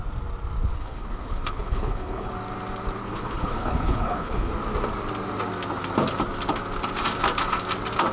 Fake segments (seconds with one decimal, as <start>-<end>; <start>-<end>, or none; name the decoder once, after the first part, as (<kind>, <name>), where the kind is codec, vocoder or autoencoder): 0.7-2.3 (codec, HILCodec); 3.0-4.5